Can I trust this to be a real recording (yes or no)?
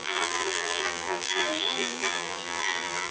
no